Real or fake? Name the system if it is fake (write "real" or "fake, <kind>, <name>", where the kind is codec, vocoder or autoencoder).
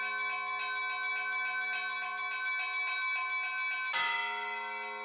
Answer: real